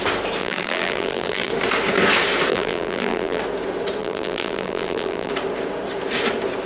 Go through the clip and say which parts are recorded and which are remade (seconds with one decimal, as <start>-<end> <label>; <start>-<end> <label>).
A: 0.0-0.4 recorded; 0.4-1.5 remade; 1.5-2.5 recorded; 2.5-3.4 remade; 3.4-4.0 recorded; 4.0-5.3 remade; 5.3-6.7 recorded